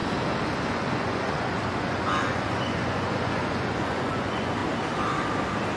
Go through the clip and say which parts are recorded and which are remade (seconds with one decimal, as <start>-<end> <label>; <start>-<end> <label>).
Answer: 0.0-0.7 recorded; 0.7-4.6 remade; 4.6-5.8 recorded